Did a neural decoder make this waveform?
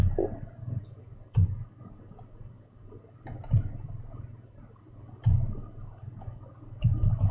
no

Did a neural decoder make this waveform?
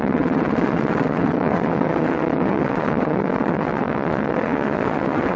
yes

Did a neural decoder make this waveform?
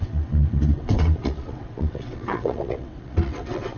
yes